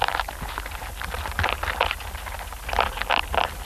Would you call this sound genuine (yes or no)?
yes